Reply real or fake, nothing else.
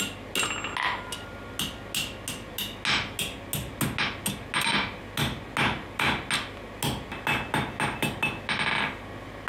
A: real